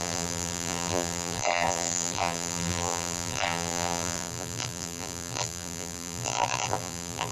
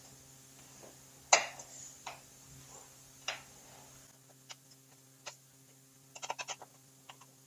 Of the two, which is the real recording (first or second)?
second